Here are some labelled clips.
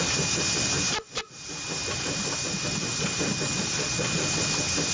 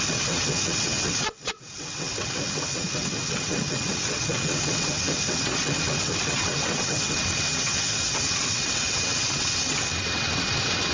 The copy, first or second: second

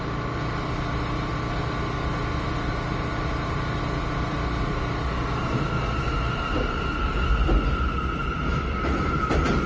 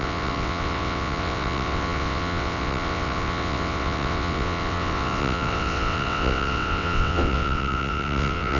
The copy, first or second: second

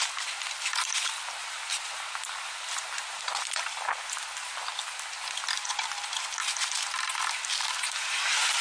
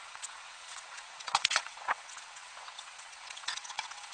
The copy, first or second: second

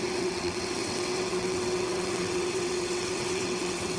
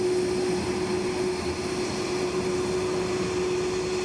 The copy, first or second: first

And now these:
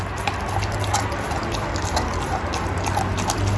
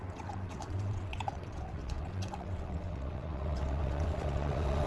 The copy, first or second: second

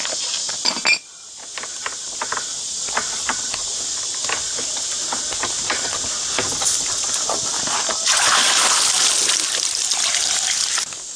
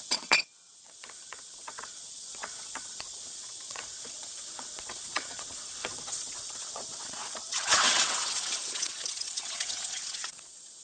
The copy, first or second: second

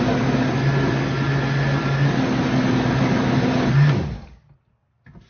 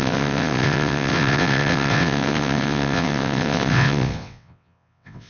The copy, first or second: second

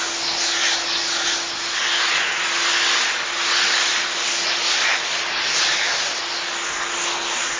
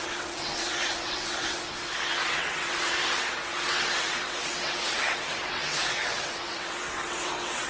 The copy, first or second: second